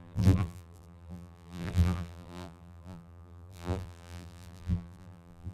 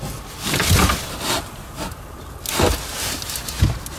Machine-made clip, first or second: first